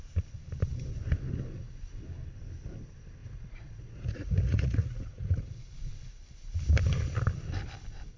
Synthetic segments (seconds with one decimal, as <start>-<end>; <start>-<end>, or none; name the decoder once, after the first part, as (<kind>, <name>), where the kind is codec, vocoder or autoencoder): 3.2-5.5 (vocoder, Vocos)

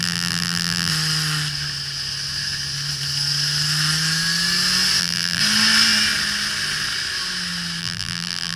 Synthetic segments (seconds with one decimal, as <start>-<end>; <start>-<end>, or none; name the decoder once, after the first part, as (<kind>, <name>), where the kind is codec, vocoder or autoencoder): 0.0-0.9 (vocoder, BigVGAN v2); 5.0-5.4; 7.8-8.6

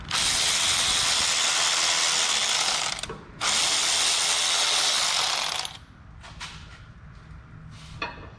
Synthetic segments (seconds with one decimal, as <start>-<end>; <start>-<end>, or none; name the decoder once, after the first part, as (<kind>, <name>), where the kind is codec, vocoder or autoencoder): none

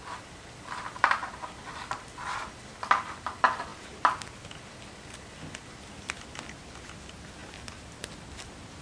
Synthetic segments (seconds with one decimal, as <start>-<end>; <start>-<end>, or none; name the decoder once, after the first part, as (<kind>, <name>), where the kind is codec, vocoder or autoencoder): none

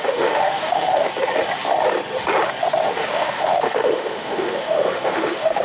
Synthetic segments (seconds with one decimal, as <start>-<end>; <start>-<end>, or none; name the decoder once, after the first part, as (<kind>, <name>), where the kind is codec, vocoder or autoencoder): 0.0-1.1 (autoencoder, DAC-VAE); 2.9-5.6